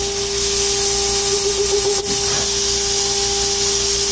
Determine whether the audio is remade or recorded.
recorded